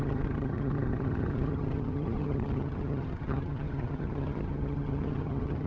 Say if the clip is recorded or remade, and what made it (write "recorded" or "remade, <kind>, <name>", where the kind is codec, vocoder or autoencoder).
remade, vocoder, HiFi-GAN